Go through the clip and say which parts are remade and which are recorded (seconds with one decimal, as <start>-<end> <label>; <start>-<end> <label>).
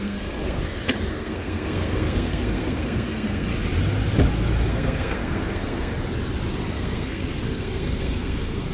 0.0-0.6 remade; 0.6-1.1 recorded; 1.1-3.5 remade; 3.5-4.7 recorded; 4.7-5.9 remade; 5.9-6.7 recorded; 6.7-8.7 remade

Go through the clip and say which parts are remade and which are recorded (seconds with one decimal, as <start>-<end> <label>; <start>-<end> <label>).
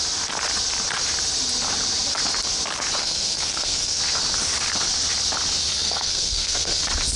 0.0-3.0 recorded; 3.0-4.0 remade; 4.0-5.7 recorded; 5.7-6.8 remade; 6.8-7.2 recorded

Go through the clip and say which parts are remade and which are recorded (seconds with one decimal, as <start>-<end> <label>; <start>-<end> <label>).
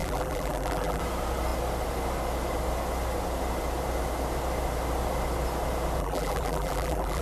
0.0-1.0 remade; 1.0-6.0 recorded; 6.0-7.2 remade